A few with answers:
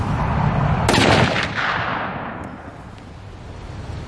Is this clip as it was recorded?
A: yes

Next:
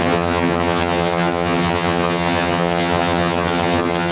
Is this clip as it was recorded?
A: no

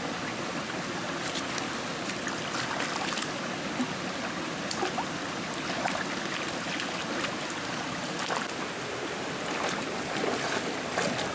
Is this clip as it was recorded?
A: yes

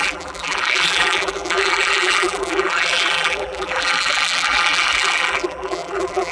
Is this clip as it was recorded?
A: no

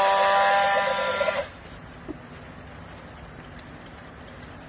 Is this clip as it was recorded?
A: yes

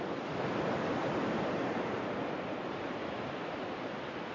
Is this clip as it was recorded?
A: yes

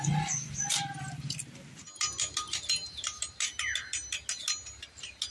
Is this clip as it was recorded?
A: yes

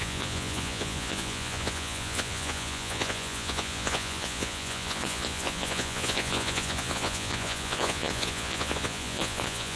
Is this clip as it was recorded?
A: no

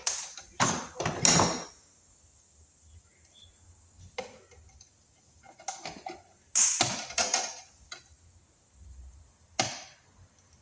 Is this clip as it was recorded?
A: yes